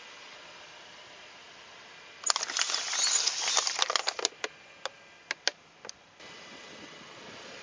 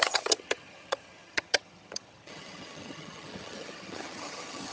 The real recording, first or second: first